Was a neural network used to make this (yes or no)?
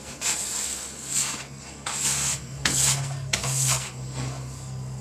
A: yes